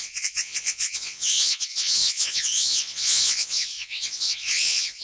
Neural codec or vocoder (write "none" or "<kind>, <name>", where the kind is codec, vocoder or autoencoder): vocoder, WaveNeXt